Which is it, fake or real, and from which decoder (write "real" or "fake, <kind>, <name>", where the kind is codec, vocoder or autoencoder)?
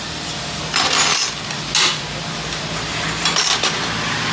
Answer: real